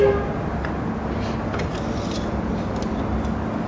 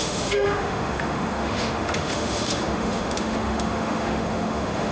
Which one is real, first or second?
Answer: first